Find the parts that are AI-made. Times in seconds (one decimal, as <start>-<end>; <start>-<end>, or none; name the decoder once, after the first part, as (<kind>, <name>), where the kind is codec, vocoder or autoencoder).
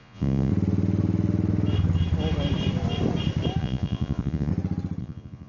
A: 0.0-0.5 (vocoder, Vocos); 3.6-4.5; 5.0-5.5